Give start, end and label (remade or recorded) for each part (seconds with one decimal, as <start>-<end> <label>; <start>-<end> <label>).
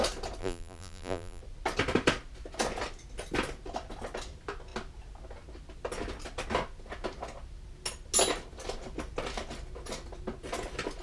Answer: 0.0-0.4 recorded; 0.4-1.4 remade; 1.4-11.0 recorded